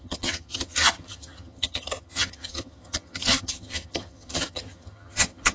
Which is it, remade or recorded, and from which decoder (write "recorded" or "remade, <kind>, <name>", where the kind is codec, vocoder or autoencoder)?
remade, vocoder, HiFi-GAN